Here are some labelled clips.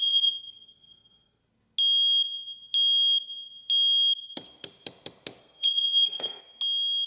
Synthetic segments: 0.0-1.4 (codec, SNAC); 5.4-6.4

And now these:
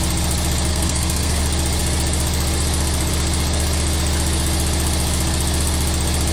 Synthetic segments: 0.7-1.4 (codec, SNAC)

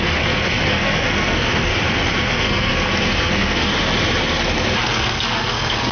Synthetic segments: 0.0-1.7 (codec, SNAC); 2.3-2.7; 3.2-3.7; 4.9-5.9

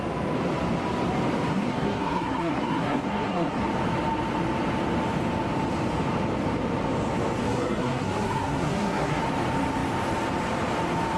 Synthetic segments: 1.5-3.6 (codec, SNAC); 7.4-9.2

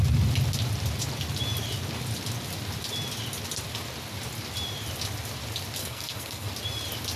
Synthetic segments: 5.8-6.5 (codec, SNAC)

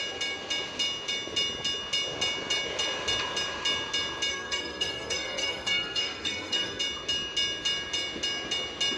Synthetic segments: 4.3-6.8 (codec, SNAC)

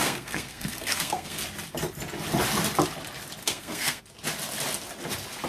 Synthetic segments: 0.0-1.4 (codec, SNAC); 3.4-4.0

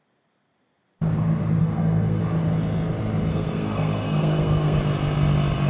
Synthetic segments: 1.6-2.2 (codec, SNAC); 3.3-4.8